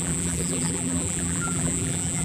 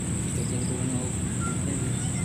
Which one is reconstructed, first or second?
first